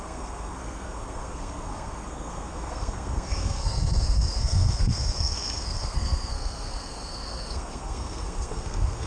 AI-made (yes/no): yes